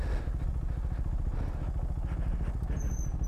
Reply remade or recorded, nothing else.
recorded